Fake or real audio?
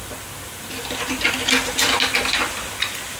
real